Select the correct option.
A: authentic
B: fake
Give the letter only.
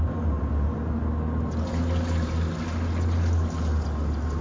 A